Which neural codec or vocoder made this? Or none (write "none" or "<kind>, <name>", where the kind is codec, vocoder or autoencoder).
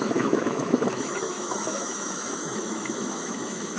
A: autoencoder, DAC-VAE